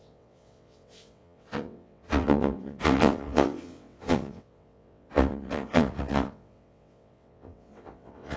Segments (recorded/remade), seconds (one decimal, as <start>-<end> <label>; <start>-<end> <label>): 0.0-8.4 remade